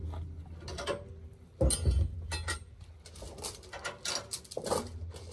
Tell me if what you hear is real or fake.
real